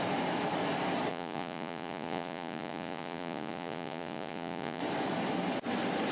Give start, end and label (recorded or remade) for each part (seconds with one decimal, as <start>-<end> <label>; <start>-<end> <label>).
0.0-1.1 recorded; 1.1-4.8 remade; 4.8-6.1 recorded